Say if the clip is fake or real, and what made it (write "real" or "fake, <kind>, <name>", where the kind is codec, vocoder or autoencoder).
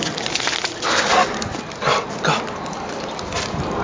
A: real